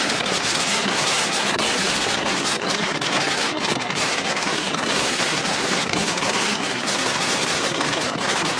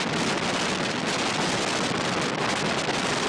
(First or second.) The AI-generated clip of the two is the first